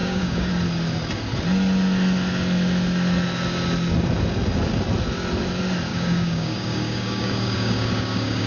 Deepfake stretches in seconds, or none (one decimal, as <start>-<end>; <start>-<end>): 0.0-0.5; 5.9-8.5